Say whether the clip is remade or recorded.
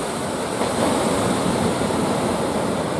recorded